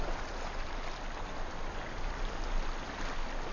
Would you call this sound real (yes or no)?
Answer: yes